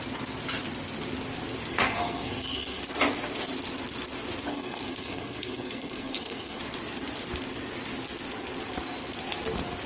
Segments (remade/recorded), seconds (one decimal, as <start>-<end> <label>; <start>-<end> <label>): 0.0-1.7 recorded; 1.7-2.8 remade; 2.8-4.5 recorded; 4.5-6.6 remade; 6.6-9.9 recorded